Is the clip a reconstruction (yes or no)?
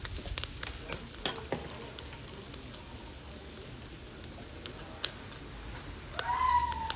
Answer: no